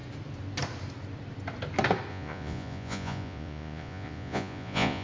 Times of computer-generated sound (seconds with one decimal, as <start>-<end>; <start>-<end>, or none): 2.1-5.0